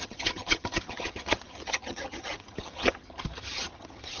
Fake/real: fake